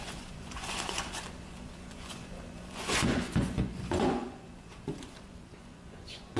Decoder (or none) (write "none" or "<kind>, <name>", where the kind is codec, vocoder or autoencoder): vocoder, Vocos